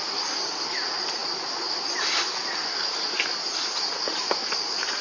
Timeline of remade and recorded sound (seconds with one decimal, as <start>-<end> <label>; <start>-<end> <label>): 0.0-5.0 recorded